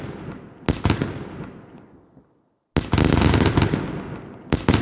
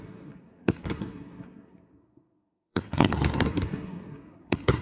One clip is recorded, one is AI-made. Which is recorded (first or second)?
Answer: first